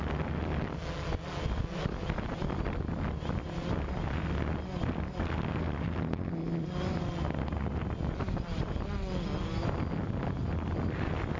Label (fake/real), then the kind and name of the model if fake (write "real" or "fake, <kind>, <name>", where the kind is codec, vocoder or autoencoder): real